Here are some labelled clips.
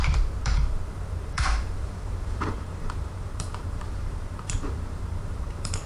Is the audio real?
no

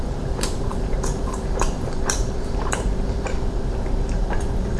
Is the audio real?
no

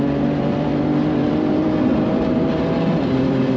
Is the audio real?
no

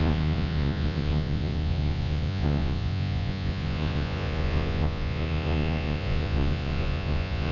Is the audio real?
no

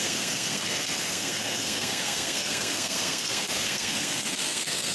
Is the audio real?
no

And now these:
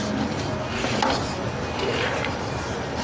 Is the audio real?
yes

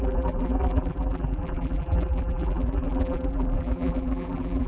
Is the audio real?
no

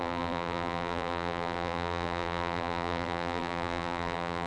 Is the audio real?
no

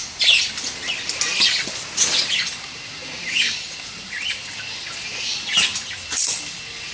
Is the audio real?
yes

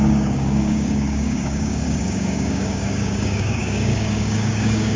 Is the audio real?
no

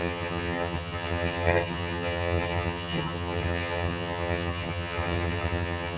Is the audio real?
no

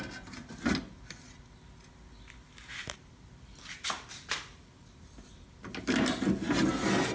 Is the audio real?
yes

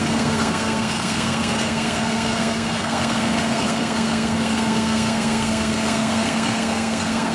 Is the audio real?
no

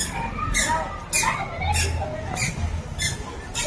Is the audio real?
yes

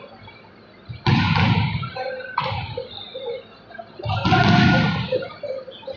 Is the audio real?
yes